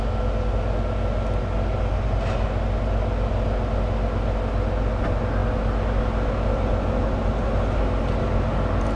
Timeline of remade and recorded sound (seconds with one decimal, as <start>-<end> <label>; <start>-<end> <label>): 0.0-9.0 recorded